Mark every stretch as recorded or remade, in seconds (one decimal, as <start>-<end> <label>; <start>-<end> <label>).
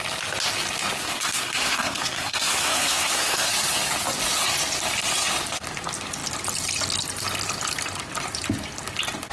0.0-1.0 recorded; 1.0-3.5 remade; 3.5-9.3 recorded